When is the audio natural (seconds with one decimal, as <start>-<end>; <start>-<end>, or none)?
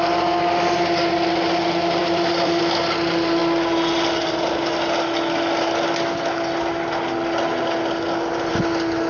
0.0-2.0; 2.6-9.1